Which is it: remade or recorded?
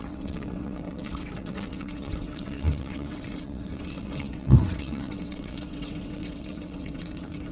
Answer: remade